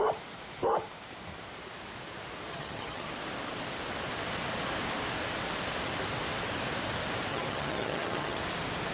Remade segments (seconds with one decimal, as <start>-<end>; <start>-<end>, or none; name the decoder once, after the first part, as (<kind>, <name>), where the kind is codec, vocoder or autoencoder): 2.5-3.1 (vocoder, HiFi-GAN); 7.3-8.4